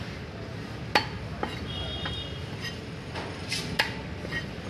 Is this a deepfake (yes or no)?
no